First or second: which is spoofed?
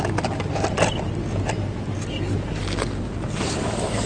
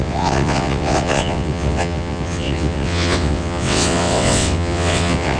second